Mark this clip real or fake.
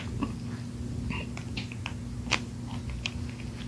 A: real